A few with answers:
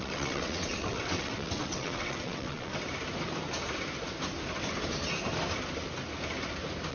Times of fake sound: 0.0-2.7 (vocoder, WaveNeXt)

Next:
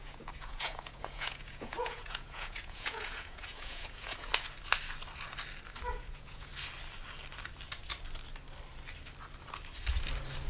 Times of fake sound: 0.0-4.3 (vocoder, Vocos); 6.0-6.5